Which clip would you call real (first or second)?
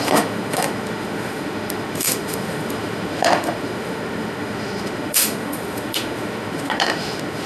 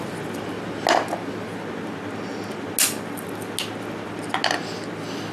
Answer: second